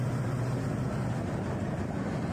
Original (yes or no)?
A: yes